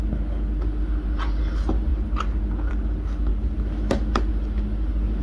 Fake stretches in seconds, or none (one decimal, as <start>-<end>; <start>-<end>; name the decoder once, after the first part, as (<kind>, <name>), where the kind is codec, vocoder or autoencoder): none